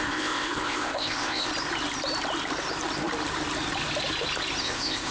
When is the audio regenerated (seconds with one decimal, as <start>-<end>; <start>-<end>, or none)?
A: 0.0-1.5; 4.6-5.1